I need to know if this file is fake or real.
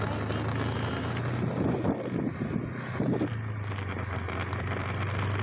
real